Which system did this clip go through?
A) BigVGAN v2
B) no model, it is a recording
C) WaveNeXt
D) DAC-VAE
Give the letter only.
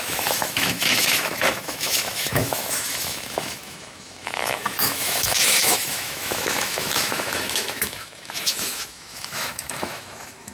D